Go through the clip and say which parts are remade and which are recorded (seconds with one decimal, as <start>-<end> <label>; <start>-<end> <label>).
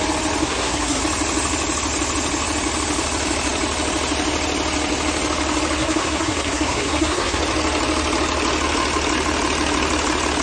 0.0-0.4 recorded; 0.4-1.0 remade; 1.0-5.8 recorded; 5.8-7.4 remade; 7.4-10.4 recorded